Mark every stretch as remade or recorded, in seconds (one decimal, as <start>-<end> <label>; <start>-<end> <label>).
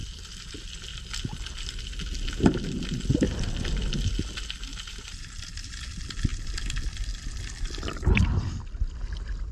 0.0-4.7 recorded; 4.7-5.8 remade; 5.8-9.5 recorded